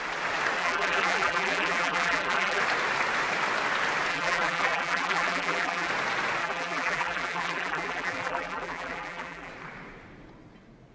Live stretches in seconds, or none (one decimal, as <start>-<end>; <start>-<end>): 0.0-0.6; 2.6-4.1; 5.9-6.4; 9.5-10.9